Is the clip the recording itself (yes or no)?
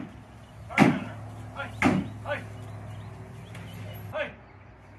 yes